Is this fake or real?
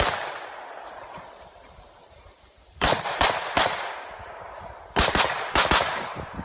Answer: fake